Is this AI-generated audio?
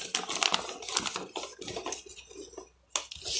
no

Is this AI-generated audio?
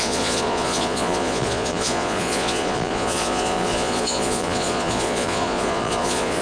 yes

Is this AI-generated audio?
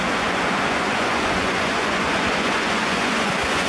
yes